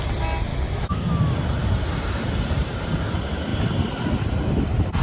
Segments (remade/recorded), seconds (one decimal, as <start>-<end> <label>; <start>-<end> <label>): 0.0-0.5 recorded; 0.5-1.1 remade; 1.1-5.0 recorded